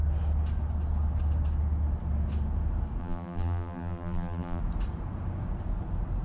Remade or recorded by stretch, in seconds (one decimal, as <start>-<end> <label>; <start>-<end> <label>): 0.0-3.0 recorded; 3.0-4.6 remade; 4.6-6.2 recorded

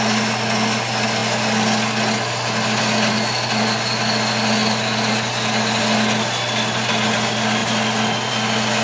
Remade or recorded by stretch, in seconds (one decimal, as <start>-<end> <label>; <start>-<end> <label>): 0.0-8.8 recorded

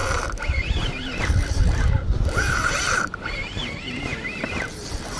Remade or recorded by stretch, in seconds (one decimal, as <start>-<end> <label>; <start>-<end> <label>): 0.0-3.6 remade; 3.6-4.5 recorded; 4.5-5.2 remade

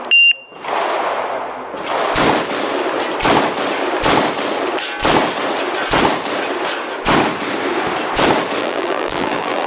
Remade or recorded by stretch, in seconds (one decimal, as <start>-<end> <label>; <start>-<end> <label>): 0.0-8.6 recorded; 8.6-9.7 remade

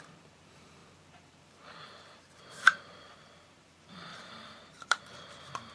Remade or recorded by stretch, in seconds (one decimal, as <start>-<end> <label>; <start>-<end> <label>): 0.0-5.7 remade

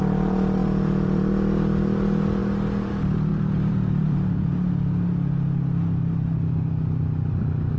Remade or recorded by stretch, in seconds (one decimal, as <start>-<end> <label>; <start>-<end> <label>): 0.0-0.6 recorded; 0.6-1.2 remade; 1.2-3.3 recorded; 3.3-4.5 remade; 4.5-7.8 recorded

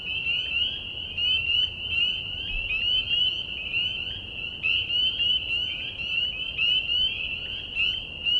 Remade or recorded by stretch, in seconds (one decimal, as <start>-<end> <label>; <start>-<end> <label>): 0.0-1.4 recorded; 1.4-2.7 remade; 2.7-8.4 recorded

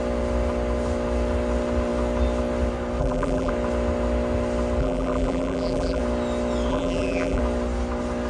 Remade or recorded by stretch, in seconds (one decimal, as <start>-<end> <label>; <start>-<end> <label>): 0.0-3.0 recorded; 3.0-3.5 remade; 3.5-4.8 recorded; 4.8-6.0 remade; 6.0-6.7 recorded; 6.7-7.4 remade; 7.4-8.3 recorded